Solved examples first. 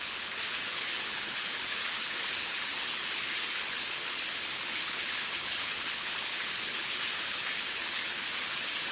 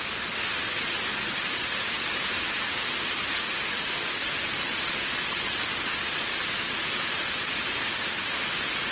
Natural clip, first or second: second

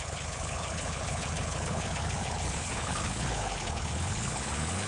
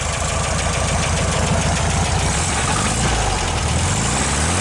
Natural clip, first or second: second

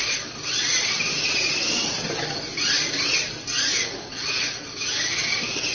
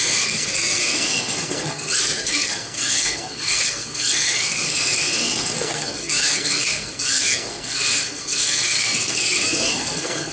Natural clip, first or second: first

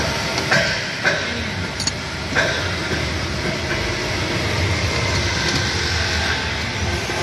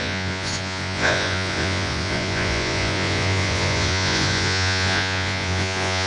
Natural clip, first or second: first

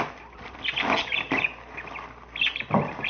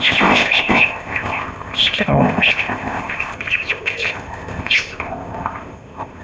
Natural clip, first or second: first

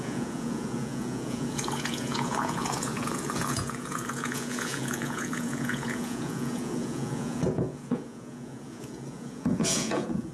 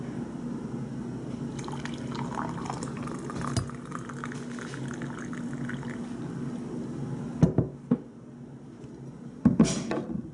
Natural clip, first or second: second